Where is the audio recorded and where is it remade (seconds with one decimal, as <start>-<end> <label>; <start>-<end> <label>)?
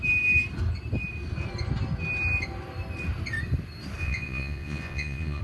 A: 0.0-4.0 recorded; 4.0-5.4 remade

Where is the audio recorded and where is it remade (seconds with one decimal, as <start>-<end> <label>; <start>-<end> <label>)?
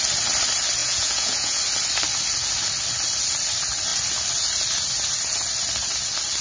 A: 0.0-0.8 recorded; 0.8-1.6 remade; 1.6-6.4 recorded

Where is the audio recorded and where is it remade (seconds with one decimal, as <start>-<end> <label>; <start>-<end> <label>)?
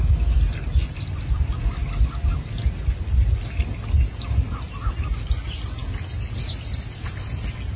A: 0.0-7.8 recorded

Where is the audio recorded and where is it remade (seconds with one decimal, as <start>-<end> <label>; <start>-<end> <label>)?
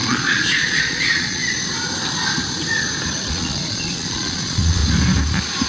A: 0.0-1.4 remade; 1.4-3.3 recorded; 3.3-4.8 remade; 4.8-5.7 recorded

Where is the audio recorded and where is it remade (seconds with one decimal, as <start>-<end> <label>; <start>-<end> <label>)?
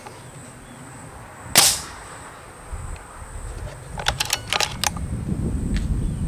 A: 0.0-6.3 recorded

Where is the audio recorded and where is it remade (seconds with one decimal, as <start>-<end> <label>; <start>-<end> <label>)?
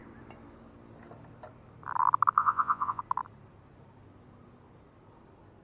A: 0.0-2.4 recorded; 2.4-3.0 remade; 3.0-5.6 recorded